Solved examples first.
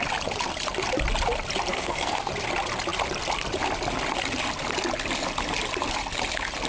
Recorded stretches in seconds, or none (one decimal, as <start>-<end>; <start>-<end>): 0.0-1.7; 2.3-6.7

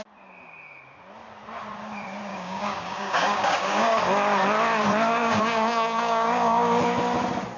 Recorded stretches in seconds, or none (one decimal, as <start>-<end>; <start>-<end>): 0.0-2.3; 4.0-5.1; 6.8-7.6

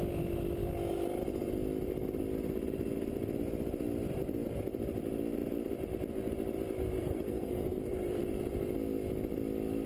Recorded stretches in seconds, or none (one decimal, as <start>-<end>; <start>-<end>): 0.0-7.0; 8.2-9.9